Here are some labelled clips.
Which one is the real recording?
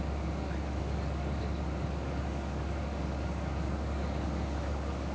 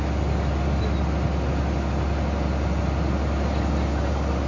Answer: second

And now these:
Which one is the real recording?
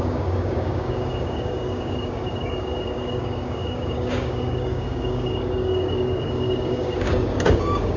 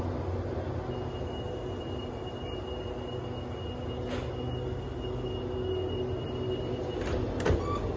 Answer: second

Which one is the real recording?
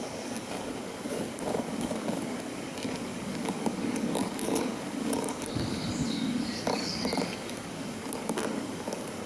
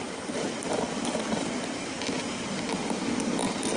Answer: second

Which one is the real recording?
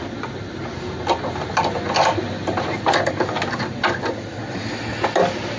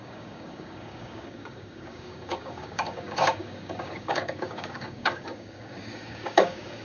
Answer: first